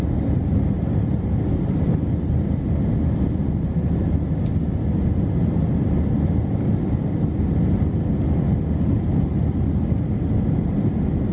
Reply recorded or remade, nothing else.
recorded